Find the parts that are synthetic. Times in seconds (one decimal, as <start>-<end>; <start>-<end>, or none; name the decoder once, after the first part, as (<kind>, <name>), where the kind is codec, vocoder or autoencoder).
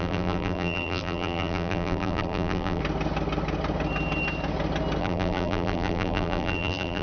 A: 0.0-2.8 (vocoder, BigVGAN v2); 5.0-7.0